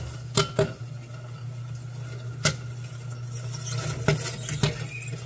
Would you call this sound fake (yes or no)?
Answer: no